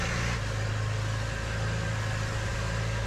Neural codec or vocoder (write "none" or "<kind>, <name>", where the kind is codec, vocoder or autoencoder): none